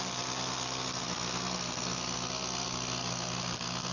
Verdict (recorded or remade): recorded